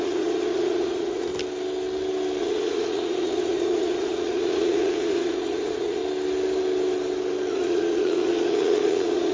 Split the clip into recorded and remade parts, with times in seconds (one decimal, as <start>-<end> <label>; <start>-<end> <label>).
0.0-1.3 remade; 1.3-2.4 recorded; 2.4-6.0 remade; 6.0-7.5 recorded; 7.5-9.3 remade